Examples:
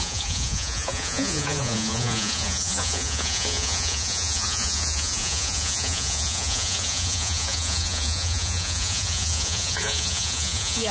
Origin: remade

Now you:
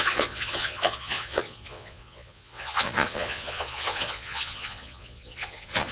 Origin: remade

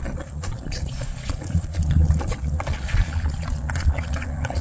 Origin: remade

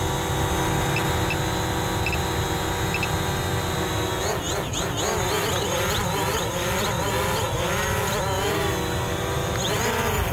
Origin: recorded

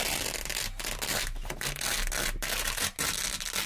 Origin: recorded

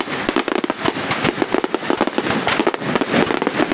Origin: recorded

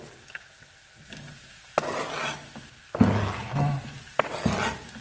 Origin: recorded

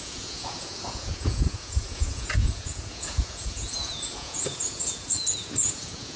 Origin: remade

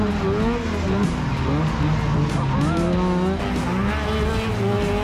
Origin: recorded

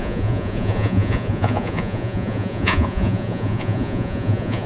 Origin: remade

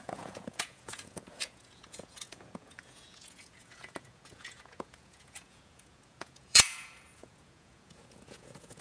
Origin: remade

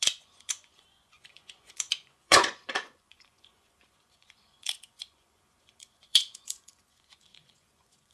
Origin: remade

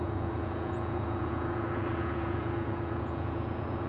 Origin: remade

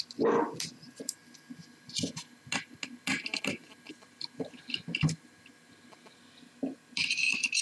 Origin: recorded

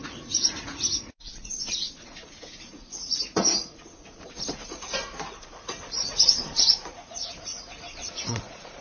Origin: remade